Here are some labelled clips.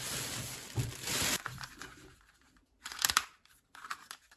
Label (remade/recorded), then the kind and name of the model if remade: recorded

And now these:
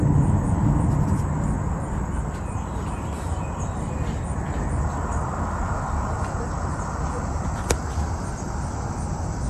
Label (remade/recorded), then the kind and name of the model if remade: recorded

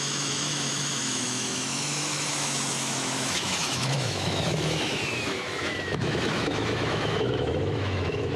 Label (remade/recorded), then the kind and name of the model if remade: remade, autoencoder, DAC-VAE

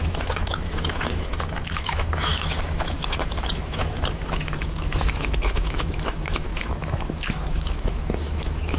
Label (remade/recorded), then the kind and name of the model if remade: remade, autoencoder, DAC-VAE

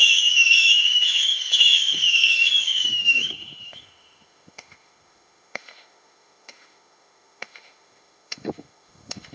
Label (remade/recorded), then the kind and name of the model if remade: remade, autoencoder, DAC-VAE